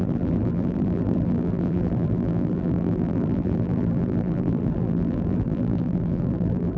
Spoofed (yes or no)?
yes